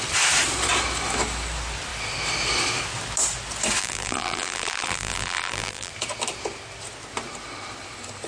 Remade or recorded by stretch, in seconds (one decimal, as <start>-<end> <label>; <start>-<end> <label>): 0.0-3.8 recorded; 3.8-5.9 remade; 5.9-8.3 recorded